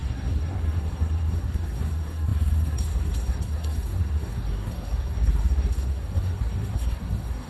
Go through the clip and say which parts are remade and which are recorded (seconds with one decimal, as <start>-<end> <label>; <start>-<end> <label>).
0.0-7.5 remade